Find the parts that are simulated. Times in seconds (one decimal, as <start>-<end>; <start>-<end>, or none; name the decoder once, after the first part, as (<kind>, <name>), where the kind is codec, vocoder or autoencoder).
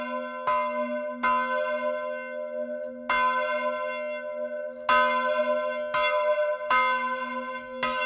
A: none